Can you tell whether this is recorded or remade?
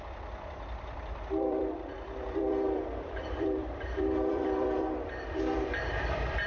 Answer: remade